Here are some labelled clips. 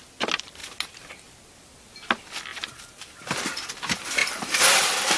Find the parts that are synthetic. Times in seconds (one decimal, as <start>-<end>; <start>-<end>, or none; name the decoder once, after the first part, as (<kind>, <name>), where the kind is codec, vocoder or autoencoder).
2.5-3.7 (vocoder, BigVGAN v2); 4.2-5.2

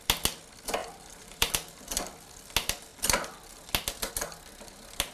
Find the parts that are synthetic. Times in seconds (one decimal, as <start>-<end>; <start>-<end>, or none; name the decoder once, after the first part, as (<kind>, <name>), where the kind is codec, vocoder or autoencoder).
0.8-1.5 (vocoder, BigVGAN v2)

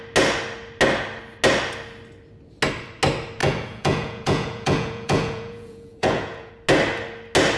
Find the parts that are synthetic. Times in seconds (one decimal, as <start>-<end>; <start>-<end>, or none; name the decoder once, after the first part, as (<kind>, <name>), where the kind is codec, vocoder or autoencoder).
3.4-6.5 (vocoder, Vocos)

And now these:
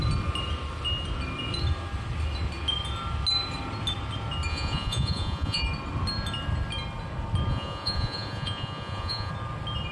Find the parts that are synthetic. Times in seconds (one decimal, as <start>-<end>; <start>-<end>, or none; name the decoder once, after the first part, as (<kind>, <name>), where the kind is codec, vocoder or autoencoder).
4.5-5.6 (vocoder, Vocos); 7.5-9.3

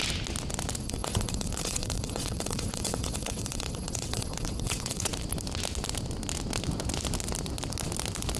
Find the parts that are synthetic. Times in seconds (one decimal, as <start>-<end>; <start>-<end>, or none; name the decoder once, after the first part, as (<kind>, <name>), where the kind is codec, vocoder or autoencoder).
0.8-5.1 (vocoder, WaveNeXt)

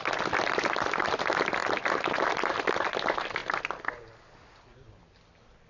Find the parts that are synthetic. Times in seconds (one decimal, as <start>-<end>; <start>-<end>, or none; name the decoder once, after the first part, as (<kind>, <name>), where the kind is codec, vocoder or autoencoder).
none